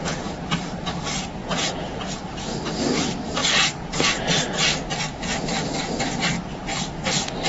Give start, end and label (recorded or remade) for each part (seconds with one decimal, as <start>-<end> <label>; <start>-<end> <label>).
0.0-1.4 recorded; 1.4-2.1 remade; 2.1-7.5 recorded

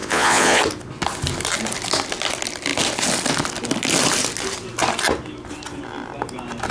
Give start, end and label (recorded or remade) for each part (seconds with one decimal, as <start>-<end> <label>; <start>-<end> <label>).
0.0-0.6 remade; 0.6-6.7 recorded

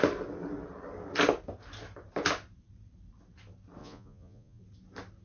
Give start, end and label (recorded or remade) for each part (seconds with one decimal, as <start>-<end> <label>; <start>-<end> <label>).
0.0-3.8 recorded; 3.8-4.6 remade; 4.6-5.2 recorded

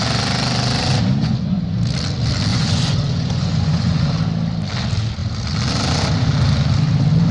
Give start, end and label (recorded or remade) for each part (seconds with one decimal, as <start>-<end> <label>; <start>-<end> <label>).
0.0-1.2 recorded; 1.2-1.8 remade; 1.8-2.5 recorded; 2.5-4.1 remade; 4.1-7.3 recorded

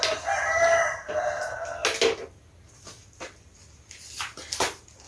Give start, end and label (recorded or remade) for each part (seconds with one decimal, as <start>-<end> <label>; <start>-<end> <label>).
0.0-5.1 recorded

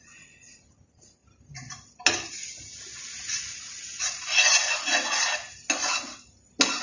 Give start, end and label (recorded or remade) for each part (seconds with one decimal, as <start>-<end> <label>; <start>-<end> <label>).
0.0-1.2 remade; 1.2-3.0 recorded; 3.0-4.4 remade; 4.4-6.8 recorded